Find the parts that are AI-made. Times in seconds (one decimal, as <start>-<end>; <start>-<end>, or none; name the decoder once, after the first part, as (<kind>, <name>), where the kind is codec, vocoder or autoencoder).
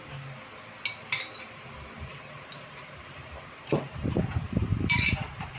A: 2.1-5.6 (vocoder, BigVGAN v2)